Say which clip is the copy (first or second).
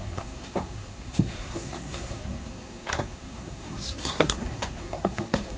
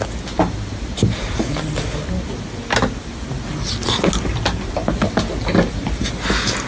first